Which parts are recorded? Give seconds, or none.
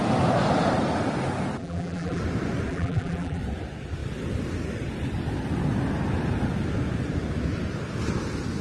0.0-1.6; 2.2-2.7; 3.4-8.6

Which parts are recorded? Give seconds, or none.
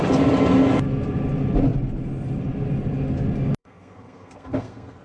0.0-3.6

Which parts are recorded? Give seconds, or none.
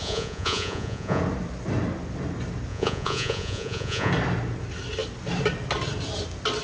1.2-2.7; 4.1-6.6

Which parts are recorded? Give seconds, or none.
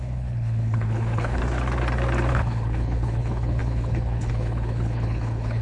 1.4-2.3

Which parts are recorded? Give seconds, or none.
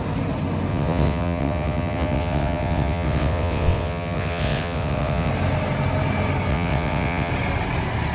0.0-0.7; 5.3-6.5; 7.3-8.1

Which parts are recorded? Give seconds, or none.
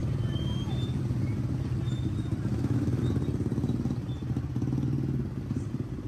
0.0-2.5; 3.0-6.1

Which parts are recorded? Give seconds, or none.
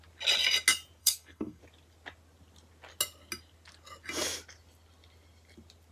0.0-1.0; 1.6-5.9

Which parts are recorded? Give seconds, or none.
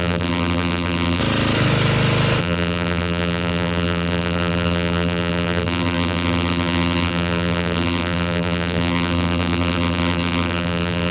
1.2-2.4